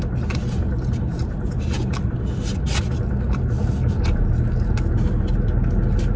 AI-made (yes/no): no